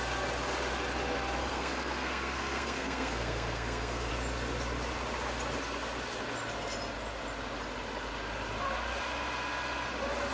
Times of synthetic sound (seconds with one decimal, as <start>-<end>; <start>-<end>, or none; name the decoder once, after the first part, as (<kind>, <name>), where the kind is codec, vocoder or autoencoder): 1.4-4.1 (codec, SNAC)